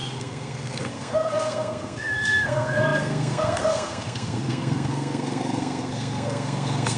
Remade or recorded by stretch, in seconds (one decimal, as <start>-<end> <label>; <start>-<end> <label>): 0.0-7.0 remade